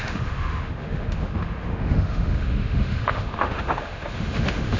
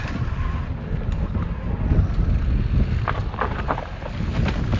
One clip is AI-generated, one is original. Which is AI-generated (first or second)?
first